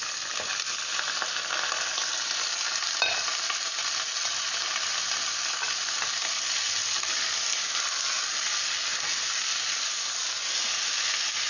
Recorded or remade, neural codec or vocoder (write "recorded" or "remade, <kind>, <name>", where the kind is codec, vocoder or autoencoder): recorded